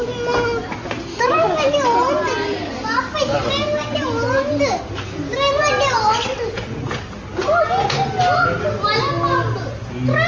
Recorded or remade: recorded